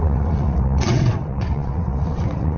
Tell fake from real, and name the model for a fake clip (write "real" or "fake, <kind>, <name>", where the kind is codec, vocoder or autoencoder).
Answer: fake, vocoder, WaveNeXt